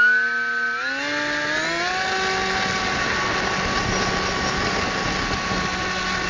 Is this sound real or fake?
real